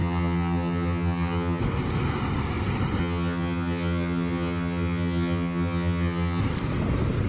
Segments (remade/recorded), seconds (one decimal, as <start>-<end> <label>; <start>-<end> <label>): 0.0-1.6 remade; 1.6-3.0 recorded; 3.0-6.4 remade; 6.4-7.3 recorded

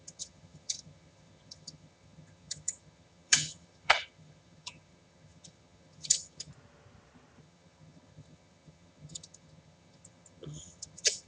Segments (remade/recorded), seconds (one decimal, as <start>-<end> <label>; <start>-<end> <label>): 0.0-6.5 remade; 6.5-7.4 recorded; 7.4-11.3 remade

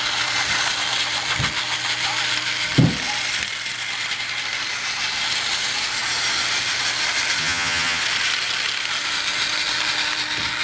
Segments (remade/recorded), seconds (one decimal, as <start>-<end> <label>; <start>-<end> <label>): 0.0-7.4 recorded; 7.4-8.0 remade; 8.0-10.6 recorded

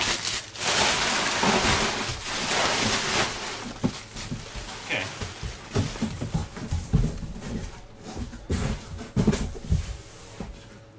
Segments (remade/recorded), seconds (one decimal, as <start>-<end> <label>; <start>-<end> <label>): 0.0-11.0 recorded

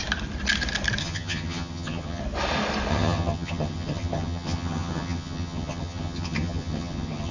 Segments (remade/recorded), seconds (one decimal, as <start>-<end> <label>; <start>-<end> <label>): 0.0-1.0 recorded; 1.0-2.2 remade; 2.2-2.9 recorded; 2.9-7.3 remade

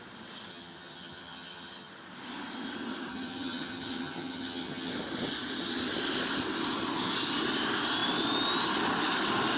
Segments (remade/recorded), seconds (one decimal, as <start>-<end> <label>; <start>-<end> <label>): 0.0-0.5 recorded; 0.5-1.9 remade; 1.9-3.1 recorded; 3.1-4.9 remade; 4.9-9.6 recorded

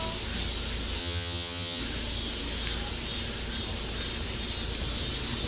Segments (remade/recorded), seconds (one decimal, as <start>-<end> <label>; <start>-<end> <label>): 0.0-1.0 recorded; 1.0-1.8 remade; 1.8-5.5 recorded